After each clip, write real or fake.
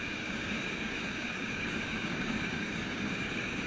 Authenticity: fake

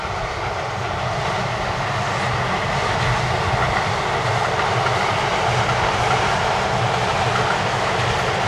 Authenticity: real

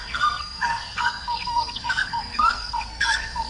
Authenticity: fake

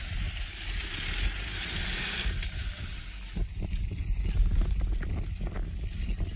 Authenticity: real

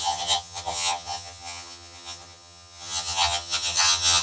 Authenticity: fake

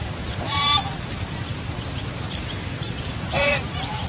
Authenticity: fake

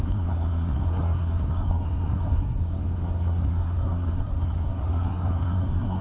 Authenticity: fake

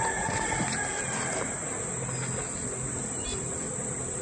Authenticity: real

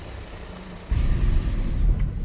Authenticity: fake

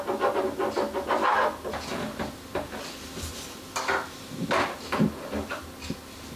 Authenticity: real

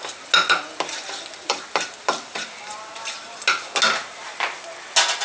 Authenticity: real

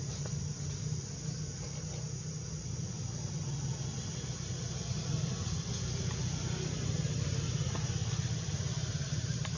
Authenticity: real